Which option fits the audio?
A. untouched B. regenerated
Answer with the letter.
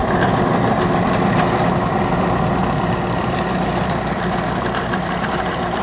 B